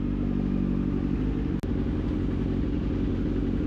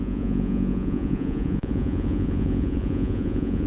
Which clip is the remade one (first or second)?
second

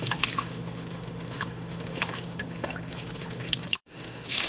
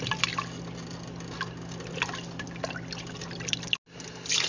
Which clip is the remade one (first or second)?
first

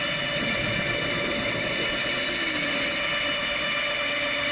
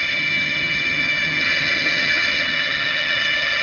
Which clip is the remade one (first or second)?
second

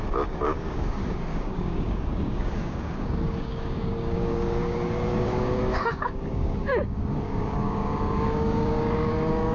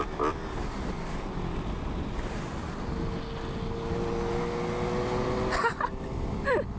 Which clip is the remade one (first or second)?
first